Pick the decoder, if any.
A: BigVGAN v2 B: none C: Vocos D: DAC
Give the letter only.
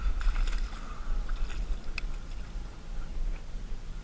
B